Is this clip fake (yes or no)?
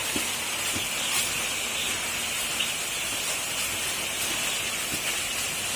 no